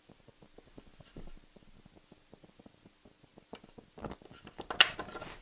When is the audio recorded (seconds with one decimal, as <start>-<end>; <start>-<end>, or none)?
0.0-5.4